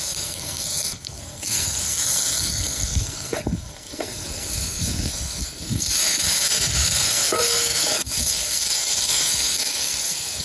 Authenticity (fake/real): fake